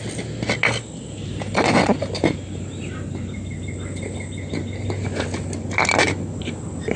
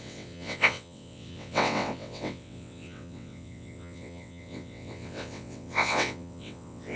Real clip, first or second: first